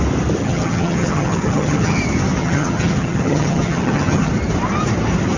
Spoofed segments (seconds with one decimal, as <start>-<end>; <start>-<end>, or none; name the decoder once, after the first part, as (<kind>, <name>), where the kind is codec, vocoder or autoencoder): 0.4-2.0 (vocoder, HiFi-GAN); 2.4-4.3

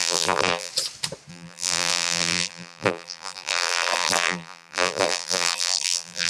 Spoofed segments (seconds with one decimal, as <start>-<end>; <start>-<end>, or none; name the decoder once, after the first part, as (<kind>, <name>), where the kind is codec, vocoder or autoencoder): 0.0-0.7 (vocoder, BigVGAN v2); 1.3-6.3

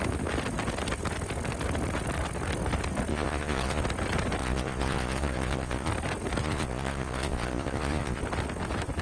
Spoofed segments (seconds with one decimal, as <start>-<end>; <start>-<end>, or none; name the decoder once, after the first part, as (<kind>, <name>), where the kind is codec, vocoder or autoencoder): 3.1-3.8 (vocoder, Vocos); 4.4-5.9; 6.4-8.2

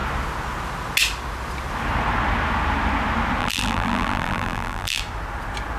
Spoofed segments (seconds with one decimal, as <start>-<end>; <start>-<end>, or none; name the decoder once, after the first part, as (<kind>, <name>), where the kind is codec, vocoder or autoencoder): 3.4-5.0 (vocoder, BigVGAN v2)

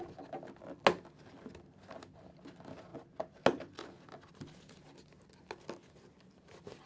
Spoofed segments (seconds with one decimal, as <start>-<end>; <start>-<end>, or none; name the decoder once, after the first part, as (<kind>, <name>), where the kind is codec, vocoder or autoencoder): none